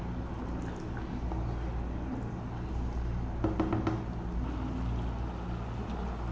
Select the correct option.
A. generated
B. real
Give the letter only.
B